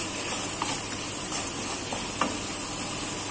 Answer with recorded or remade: recorded